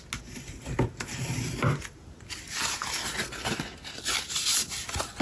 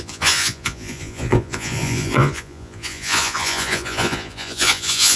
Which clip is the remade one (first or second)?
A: second